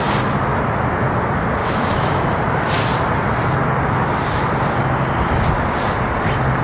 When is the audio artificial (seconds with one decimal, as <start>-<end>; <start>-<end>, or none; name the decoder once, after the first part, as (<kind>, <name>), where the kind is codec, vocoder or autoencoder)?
1.6-2.2 (autoencoder, DAC-VAE)